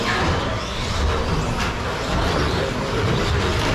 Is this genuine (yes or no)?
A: yes